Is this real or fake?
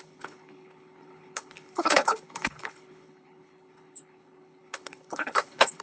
fake